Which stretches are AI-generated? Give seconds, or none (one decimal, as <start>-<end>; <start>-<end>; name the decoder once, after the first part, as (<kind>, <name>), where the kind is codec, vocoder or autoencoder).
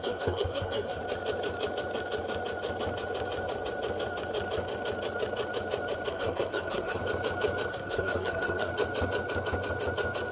0.0-1.0 (codec, SNAC); 6.1-7.0; 7.7-8.7